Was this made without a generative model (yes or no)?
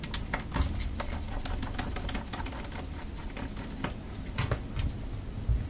yes